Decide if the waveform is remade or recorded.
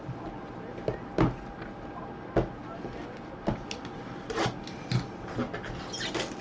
recorded